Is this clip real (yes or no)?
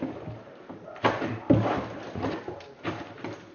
yes